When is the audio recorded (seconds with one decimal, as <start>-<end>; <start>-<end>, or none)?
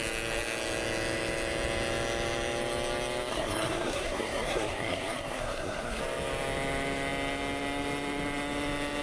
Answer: 0.0-3.3; 6.0-9.0